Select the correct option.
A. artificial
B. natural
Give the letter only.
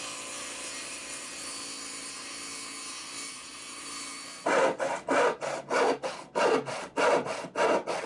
B